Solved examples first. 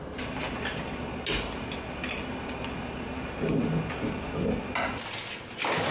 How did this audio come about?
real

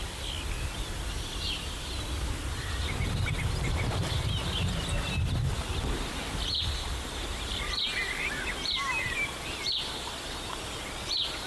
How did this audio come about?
real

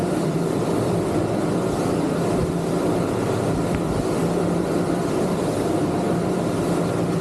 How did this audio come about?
fake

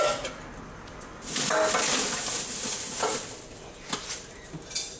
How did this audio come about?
real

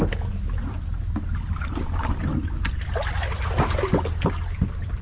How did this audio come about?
real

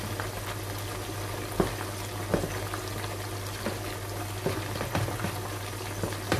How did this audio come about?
real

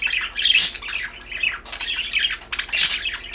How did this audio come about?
real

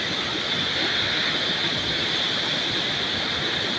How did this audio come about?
real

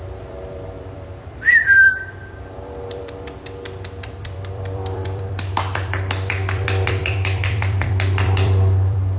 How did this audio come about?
fake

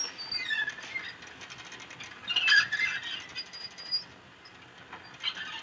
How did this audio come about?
real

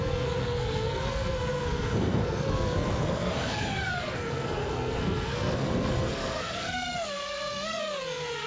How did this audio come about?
fake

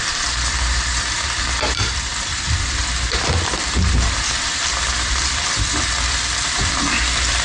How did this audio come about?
fake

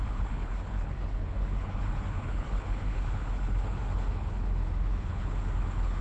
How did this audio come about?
fake